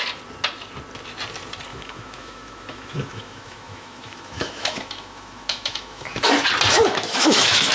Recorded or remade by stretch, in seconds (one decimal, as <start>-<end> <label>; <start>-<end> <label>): 0.0-1.7 recorded; 1.7-6.3 remade; 6.3-6.7 recorded; 6.7-7.7 remade

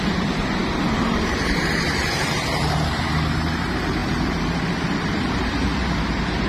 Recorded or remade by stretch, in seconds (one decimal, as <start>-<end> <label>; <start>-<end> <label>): 0.0-6.5 remade

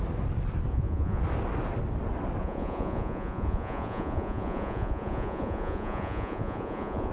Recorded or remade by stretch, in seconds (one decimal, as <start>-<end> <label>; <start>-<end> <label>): 0.0-0.7 recorded; 0.7-1.2 remade; 1.2-2.4 recorded; 2.4-7.1 remade